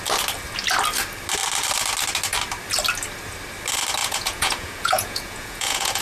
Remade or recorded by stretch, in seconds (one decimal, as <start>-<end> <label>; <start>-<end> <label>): 0.0-4.0 recorded; 4.0-6.0 remade